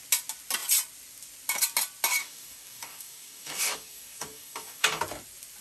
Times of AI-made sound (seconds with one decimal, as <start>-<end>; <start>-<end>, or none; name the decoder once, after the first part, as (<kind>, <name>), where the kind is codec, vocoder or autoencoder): 2.2-5.0 (codec, DAC)